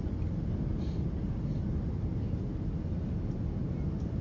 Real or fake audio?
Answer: real